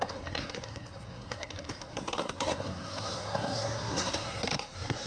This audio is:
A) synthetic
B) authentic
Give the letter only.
A